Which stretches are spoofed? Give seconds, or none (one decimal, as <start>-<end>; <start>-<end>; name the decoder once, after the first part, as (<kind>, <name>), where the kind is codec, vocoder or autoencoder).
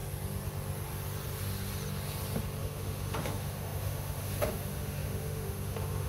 2.6-6.1 (autoencoder, DAC-VAE)